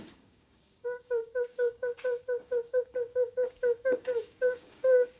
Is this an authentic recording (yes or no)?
no